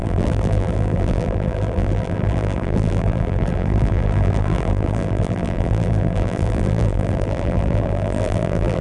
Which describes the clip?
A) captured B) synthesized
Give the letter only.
B